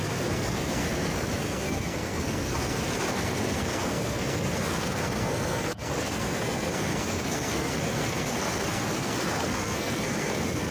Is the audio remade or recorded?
remade